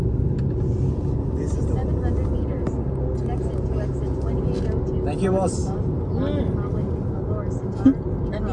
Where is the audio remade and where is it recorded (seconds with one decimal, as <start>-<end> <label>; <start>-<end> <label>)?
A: 0.0-8.5 recorded